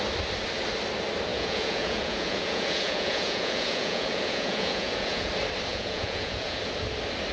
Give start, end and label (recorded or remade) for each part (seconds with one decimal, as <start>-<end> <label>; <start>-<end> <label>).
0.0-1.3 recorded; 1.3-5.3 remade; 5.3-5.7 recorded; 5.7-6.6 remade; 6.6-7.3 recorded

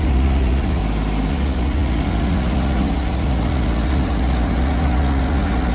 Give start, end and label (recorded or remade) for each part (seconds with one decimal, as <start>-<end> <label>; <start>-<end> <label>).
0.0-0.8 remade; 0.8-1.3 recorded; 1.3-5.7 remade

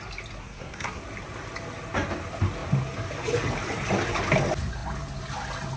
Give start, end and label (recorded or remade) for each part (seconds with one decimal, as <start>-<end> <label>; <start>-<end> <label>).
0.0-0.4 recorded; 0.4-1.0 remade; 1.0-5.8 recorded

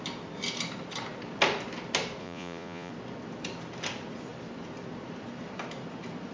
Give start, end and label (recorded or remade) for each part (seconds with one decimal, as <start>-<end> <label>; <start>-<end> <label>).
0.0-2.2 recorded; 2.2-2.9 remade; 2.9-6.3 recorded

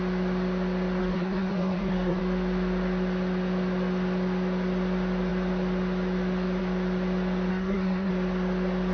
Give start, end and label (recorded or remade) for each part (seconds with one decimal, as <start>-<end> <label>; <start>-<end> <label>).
0.0-1.0 recorded; 1.0-2.2 remade; 2.2-7.5 recorded; 7.5-8.1 remade; 8.1-8.9 recorded

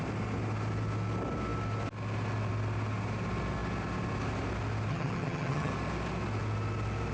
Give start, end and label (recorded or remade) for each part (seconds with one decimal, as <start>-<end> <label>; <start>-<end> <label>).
0.0-4.9 recorded; 4.9-5.7 remade; 5.7-7.1 recorded